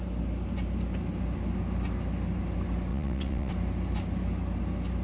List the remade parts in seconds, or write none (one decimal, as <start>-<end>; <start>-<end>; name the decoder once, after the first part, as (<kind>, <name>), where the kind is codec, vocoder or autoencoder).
2.9-3.5 (vocoder, WaveNeXt)